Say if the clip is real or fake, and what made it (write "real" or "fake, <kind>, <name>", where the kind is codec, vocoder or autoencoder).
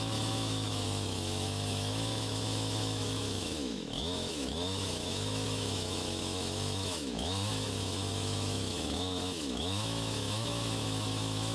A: fake, autoencoder, DAC-VAE